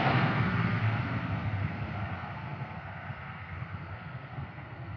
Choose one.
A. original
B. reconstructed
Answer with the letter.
B